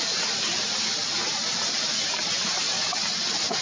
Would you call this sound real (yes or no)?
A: yes